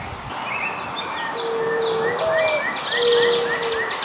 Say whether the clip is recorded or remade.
recorded